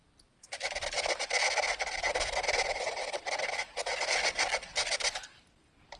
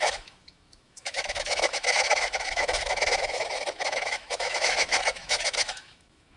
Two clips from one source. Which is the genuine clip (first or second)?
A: first